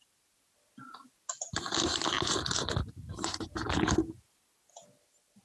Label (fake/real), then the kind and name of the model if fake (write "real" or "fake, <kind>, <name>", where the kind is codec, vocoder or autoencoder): real